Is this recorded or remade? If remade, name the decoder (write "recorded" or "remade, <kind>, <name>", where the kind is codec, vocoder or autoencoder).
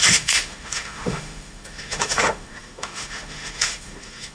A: remade, autoencoder, DAC-VAE